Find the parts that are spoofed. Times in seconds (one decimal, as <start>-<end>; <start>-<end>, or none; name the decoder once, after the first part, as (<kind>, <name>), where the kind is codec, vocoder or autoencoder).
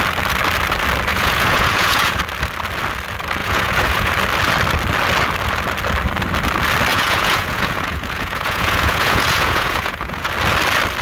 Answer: 1.1-2.2 (vocoder, Vocos); 3.4-4.1; 6.9-10.3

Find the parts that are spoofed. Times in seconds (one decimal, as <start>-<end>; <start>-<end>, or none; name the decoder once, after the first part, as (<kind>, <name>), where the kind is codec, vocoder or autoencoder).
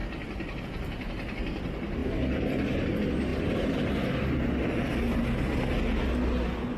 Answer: none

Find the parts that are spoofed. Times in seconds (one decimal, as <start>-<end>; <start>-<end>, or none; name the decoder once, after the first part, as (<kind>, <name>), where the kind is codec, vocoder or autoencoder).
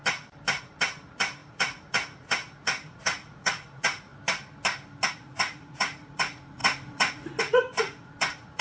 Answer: 0.6-4.1 (vocoder, Vocos); 5.1-8.6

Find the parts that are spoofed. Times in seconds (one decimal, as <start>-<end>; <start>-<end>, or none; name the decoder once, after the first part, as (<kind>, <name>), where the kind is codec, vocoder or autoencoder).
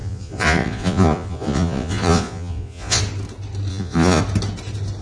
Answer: 0.0-3.0 (vocoder, Vocos); 3.7-4.2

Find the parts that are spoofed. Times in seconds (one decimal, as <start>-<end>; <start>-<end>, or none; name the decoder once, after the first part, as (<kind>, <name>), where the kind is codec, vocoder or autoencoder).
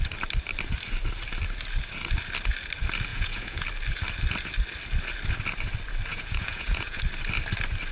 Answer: 3.1-3.6 (vocoder, Vocos); 6.1-7.0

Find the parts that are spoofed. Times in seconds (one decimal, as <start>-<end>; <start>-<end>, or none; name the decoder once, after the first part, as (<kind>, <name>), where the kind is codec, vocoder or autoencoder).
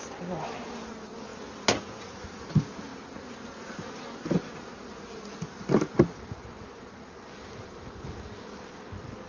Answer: none